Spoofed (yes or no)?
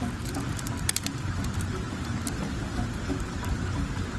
no